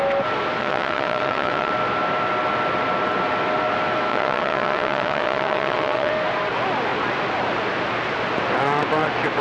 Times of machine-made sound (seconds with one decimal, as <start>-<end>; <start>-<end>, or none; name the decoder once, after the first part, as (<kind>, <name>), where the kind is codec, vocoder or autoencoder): 0.6-1.7 (vocoder, WaveNeXt); 4.1-6.1

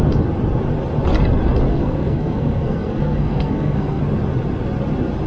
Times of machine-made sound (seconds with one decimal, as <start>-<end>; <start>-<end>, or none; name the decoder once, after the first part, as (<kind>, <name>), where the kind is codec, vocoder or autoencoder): 1.7-4.0 (codec, SNAC)

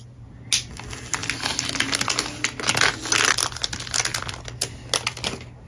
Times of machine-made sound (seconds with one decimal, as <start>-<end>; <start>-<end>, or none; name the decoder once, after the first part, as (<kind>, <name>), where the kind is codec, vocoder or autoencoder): none

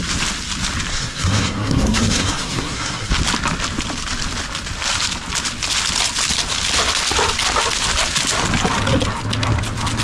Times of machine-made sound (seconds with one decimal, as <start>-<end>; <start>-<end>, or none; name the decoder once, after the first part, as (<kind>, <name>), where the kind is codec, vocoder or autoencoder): 0.9-3.1 (codec, SNAC)

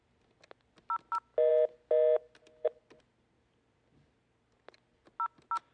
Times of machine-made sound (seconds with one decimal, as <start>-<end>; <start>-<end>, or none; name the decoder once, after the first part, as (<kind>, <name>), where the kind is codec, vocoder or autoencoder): none

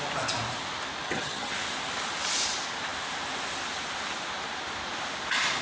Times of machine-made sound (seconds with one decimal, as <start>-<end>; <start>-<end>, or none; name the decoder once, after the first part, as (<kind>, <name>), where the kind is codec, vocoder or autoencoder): 1.0-1.5 (vocoder, HiFi-GAN)

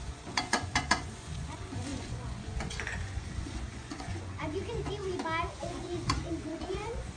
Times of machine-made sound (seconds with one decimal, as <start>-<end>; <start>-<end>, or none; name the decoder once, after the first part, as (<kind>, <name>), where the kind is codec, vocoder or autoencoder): 0.0-5.0 (vocoder, Vocos); 5.7-7.2